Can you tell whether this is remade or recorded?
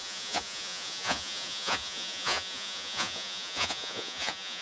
remade